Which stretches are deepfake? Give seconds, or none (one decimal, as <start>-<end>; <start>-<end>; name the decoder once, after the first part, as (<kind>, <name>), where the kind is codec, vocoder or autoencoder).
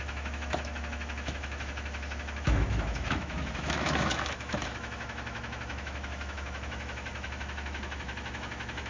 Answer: 0.0-8.9 (autoencoder, DAC-VAE)